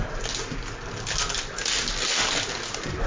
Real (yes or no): yes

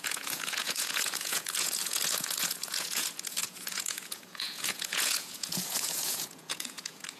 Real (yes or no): no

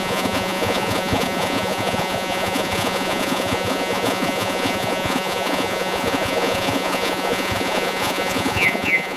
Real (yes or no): no